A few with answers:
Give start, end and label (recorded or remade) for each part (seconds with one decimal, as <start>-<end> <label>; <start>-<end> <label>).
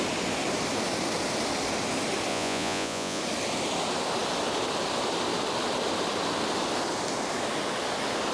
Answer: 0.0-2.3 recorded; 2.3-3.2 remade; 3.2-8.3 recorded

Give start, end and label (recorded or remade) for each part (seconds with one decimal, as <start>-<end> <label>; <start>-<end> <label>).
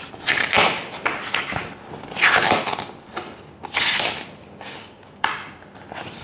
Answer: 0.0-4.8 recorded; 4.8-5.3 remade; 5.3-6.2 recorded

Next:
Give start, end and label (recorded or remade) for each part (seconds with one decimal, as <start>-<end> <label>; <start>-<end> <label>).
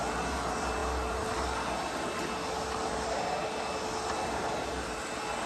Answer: 0.0-5.5 recorded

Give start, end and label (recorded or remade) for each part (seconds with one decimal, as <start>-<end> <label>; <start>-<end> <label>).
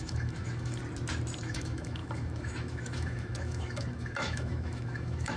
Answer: 0.0-0.8 remade; 0.8-1.4 recorded; 1.4-5.4 remade